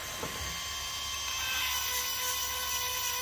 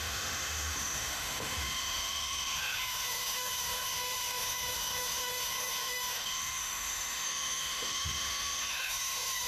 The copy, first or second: second